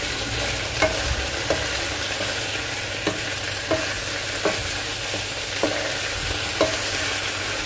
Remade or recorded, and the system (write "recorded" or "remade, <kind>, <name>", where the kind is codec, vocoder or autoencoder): recorded